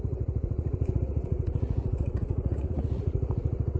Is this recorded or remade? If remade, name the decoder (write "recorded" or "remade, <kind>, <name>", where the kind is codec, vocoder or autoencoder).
remade, vocoder, Vocos